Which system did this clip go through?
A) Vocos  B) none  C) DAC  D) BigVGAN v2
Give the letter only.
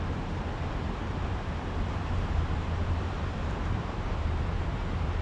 D